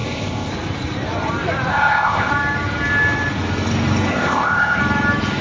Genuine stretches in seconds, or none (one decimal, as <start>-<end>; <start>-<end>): 0.5-1.7; 2.3-4.1; 4.8-5.4